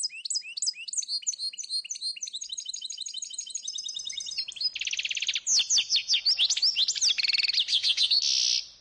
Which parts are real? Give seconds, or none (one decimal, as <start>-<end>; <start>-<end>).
0.0-7.7; 8.2-8.8

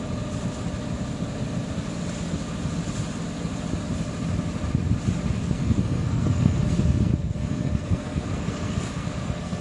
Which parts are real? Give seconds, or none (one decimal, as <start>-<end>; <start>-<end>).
0.0-5.4

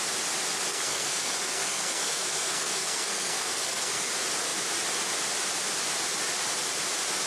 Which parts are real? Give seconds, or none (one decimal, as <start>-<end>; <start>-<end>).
0.0-0.7; 4.1-7.3

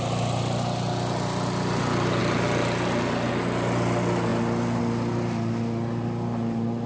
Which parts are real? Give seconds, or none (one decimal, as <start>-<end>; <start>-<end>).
0.0-6.9

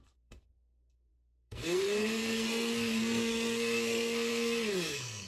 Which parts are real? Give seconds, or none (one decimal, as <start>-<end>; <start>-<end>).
none